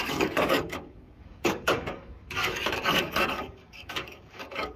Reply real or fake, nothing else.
fake